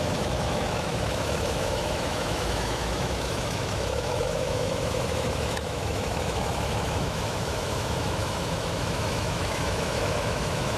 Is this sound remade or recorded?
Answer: remade